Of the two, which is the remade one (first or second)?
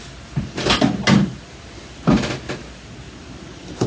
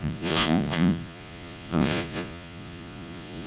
second